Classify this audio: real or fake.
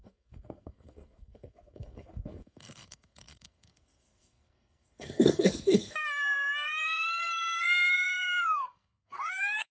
fake